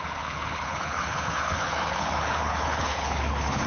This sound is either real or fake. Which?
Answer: fake